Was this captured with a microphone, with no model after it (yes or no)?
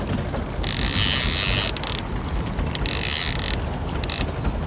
yes